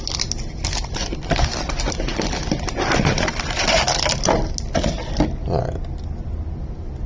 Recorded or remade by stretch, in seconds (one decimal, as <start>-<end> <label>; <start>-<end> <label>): 0.0-7.1 recorded